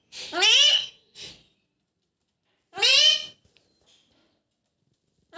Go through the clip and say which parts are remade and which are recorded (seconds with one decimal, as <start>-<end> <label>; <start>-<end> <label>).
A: 0.0-0.7 recorded; 0.7-1.3 remade; 1.3-5.4 recorded